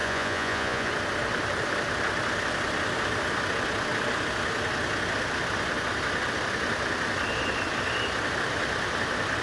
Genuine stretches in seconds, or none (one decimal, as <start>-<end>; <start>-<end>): 0.9-9.4